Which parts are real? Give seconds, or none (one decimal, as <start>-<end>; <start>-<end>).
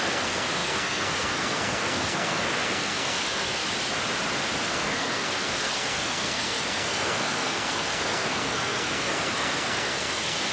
3.6-4.6